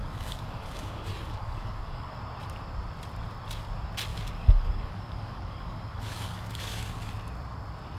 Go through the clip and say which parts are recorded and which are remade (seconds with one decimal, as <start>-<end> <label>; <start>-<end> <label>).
0.0-2.2 remade; 2.2-4.1 recorded; 4.1-7.1 remade; 7.1-8.0 recorded